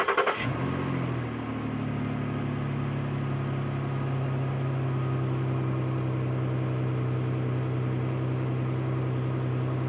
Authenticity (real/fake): real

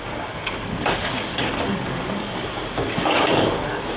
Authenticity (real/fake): fake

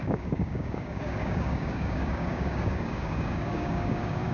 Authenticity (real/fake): fake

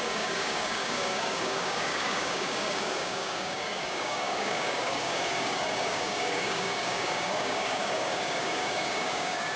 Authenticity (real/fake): fake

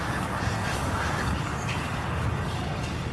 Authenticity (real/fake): fake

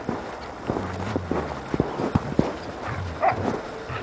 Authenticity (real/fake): real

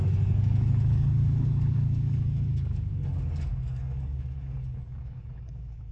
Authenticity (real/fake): fake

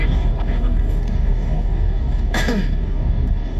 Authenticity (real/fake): fake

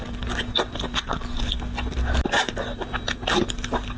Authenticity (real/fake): real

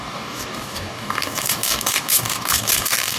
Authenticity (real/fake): fake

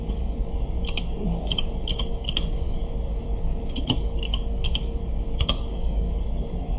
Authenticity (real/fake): fake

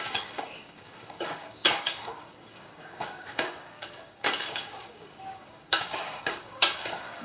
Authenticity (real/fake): fake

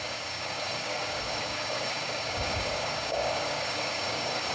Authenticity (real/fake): fake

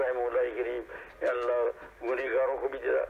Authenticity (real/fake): real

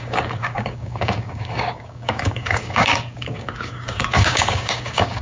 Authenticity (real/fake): fake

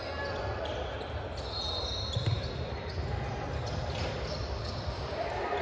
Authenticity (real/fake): real